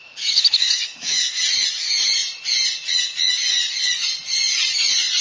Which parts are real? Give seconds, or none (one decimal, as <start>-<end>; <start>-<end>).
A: 1.4-5.2